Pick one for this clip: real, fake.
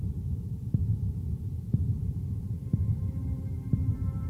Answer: fake